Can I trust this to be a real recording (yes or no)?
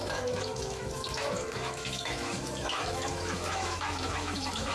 no